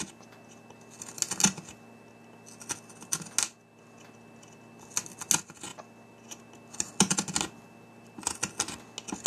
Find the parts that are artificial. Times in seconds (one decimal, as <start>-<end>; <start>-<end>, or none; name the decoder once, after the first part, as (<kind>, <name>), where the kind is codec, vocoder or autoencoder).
none